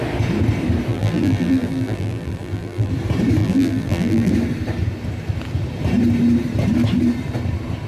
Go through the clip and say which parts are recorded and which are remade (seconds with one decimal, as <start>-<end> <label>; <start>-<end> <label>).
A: 0.0-0.9 recorded; 0.9-2.9 remade; 2.9-3.4 recorded; 3.4-4.3 remade; 4.3-7.9 recorded